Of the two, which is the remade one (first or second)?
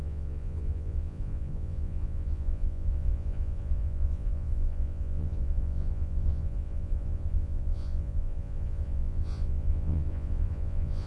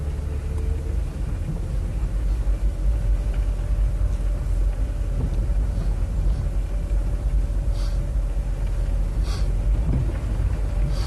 first